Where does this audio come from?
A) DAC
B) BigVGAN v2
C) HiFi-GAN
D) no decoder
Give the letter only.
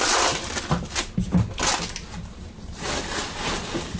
D